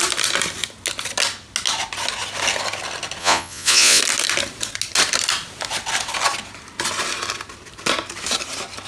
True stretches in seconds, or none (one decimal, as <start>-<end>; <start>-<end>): 0.0-3.2; 4.0-8.9